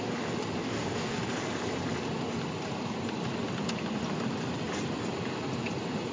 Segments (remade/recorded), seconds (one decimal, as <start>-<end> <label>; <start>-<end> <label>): 0.0-0.6 recorded; 0.6-1.2 remade; 1.2-6.1 recorded